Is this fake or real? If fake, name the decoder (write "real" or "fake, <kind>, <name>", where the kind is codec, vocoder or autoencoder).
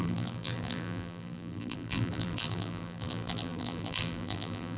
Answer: fake, vocoder, BigVGAN v2